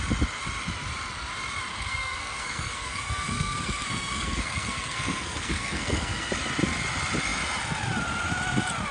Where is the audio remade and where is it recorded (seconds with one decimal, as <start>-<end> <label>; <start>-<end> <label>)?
0.0-1.7 recorded; 1.7-6.3 remade; 6.3-8.9 recorded